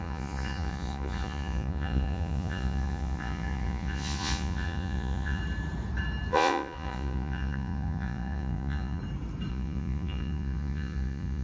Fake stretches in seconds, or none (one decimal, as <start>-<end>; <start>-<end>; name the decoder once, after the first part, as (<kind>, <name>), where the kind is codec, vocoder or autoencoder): 0.0-5.4 (vocoder, Vocos); 6.3-9.0; 9.5-11.4